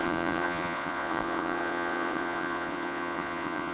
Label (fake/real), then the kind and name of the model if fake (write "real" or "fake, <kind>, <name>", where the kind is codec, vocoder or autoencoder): fake, vocoder, Vocos